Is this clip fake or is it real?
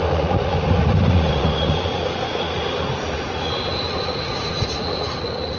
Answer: fake